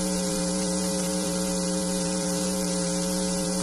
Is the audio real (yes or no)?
no